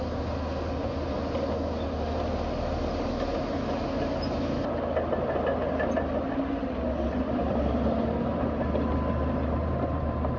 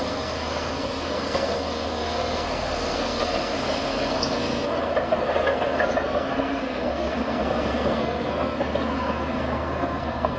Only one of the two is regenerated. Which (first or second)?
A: second